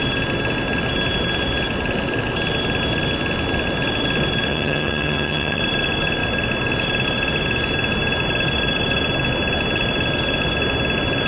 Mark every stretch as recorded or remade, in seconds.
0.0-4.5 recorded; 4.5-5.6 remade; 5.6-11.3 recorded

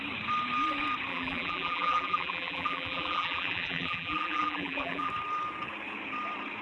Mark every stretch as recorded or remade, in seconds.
0.0-1.1 recorded; 1.1-5.1 remade; 5.1-6.6 recorded

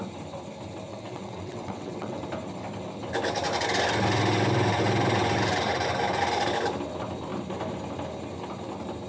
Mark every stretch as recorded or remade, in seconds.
0.0-0.9 recorded; 0.9-2.2 remade; 2.2-9.1 recorded

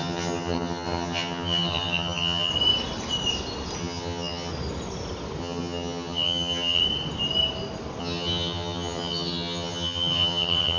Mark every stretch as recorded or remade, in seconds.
0.0-2.5 remade; 2.5-3.8 recorded; 3.8-4.5 remade; 4.5-5.4 recorded; 5.4-6.8 remade; 6.8-8.0 recorded; 8.0-10.8 remade

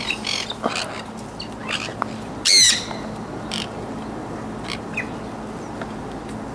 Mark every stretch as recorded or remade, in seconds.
0.0-6.5 recorded

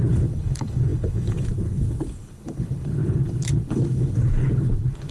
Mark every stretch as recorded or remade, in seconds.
0.0-5.1 remade

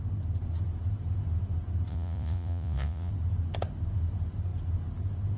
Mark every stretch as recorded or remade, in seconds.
0.0-1.9 recorded; 1.9-3.1 remade; 3.1-5.4 recorded